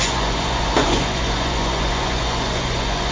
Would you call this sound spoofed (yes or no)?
yes